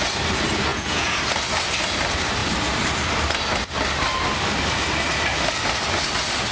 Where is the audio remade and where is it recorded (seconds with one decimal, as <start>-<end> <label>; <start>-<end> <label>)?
0.0-0.7 recorded; 0.7-1.2 remade; 1.2-6.5 recorded